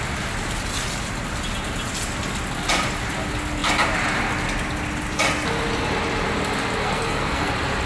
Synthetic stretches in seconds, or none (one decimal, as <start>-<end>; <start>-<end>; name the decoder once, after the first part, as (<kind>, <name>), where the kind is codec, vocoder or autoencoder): 6.8-7.5 (codec, SNAC)